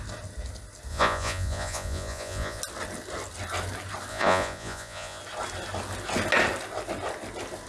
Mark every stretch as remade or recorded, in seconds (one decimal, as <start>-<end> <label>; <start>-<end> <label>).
0.0-0.9 recorded; 0.9-2.6 remade; 2.6-4.1 recorded; 4.1-5.2 remade; 5.2-7.7 recorded